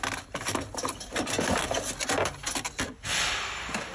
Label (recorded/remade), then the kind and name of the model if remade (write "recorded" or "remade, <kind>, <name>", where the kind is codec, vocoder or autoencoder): recorded